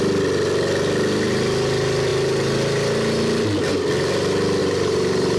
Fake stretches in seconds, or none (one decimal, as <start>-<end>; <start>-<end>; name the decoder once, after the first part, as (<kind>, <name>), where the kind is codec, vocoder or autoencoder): 4.6-5.4 (vocoder, BigVGAN v2)